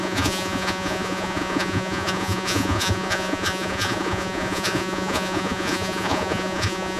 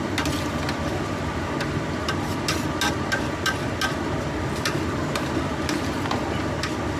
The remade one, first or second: first